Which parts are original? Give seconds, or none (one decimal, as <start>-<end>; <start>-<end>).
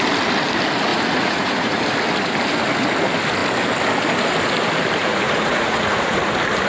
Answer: 0.0-0.9; 1.8-5.0; 6.2-6.7